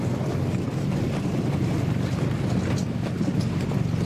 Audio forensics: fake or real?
real